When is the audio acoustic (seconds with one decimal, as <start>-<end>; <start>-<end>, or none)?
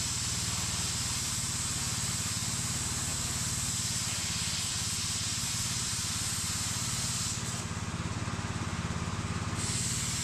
0.0-10.2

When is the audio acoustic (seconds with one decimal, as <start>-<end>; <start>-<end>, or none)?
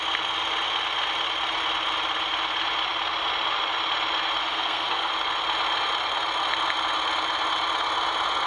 0.0-4.4; 5.1-8.5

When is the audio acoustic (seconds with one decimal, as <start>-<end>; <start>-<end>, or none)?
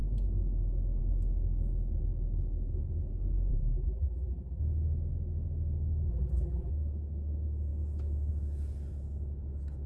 0.0-3.5; 4.6-6.1; 6.7-9.9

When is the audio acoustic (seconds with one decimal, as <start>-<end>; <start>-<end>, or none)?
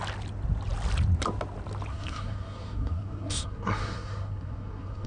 0.0-1.9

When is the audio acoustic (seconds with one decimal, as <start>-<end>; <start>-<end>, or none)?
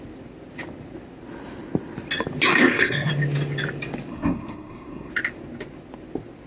0.0-2.5; 3.1-4.1; 5.1-6.5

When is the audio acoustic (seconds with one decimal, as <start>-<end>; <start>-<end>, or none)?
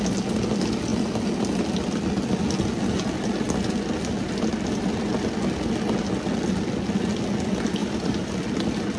0.0-7.8; 8.3-9.0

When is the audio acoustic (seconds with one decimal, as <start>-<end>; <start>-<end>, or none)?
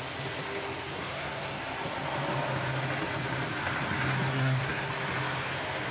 0.0-0.9; 1.6-4.3; 4.9-5.9